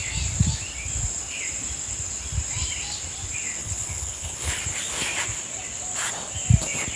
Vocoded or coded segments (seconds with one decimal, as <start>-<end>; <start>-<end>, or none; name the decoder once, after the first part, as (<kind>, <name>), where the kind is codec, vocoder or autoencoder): 3.6-4.6 (codec, HILCodec)